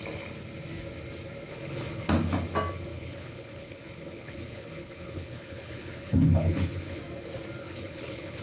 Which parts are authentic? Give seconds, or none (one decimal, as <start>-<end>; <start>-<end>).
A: 0.0-1.5; 2.1-2.9; 7.0-7.6